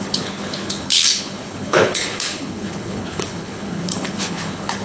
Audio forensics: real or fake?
fake